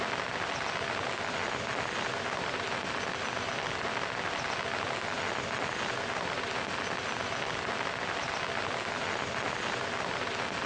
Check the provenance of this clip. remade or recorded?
recorded